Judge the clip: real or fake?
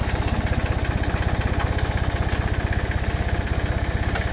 real